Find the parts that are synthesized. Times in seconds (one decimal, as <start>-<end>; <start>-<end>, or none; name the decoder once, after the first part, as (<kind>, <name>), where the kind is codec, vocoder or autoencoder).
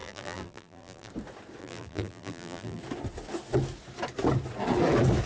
0.0-1.1 (vocoder, BigVGAN v2); 1.6-2.8